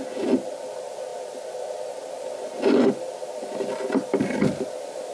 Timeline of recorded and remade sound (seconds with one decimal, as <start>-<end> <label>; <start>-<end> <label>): 0.0-5.1 recorded